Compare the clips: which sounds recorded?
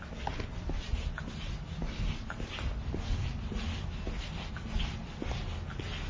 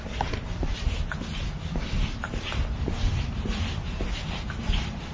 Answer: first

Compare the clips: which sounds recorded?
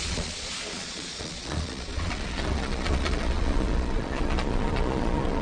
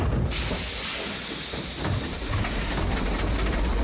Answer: second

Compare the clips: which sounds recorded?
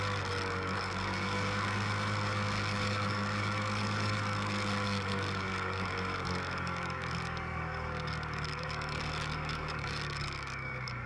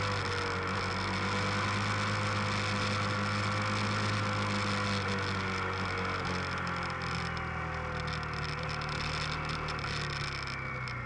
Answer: second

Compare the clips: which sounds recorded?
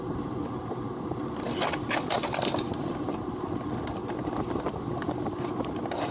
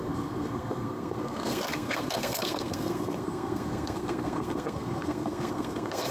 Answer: first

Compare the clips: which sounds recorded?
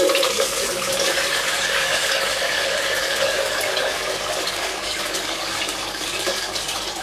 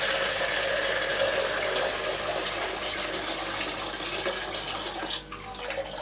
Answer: second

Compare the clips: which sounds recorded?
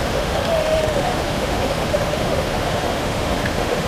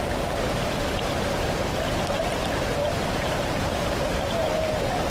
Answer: second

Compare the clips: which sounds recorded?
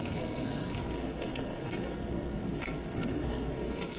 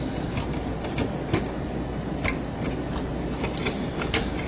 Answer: second